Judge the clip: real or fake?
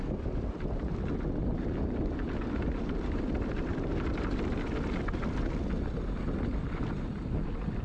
real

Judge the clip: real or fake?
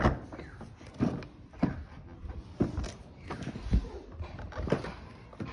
real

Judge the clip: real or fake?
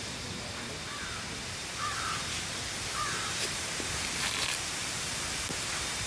fake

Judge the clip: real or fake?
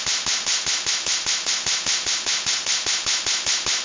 real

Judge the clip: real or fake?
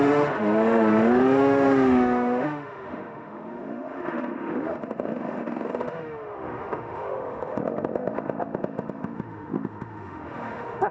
fake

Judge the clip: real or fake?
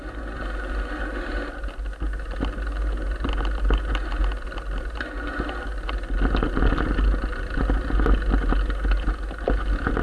real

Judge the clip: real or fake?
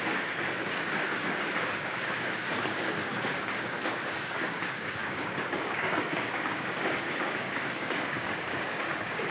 fake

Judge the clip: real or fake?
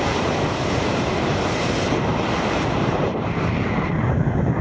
fake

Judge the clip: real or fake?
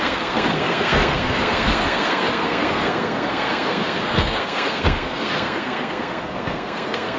fake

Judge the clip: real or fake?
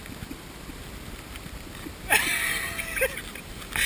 real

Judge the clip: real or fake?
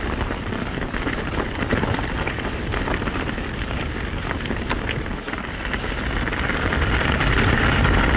real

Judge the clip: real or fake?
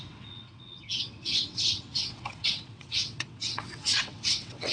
fake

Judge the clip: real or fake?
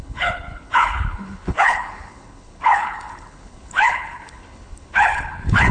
fake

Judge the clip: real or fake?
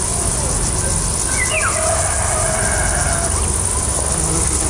real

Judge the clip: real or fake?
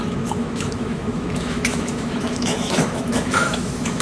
fake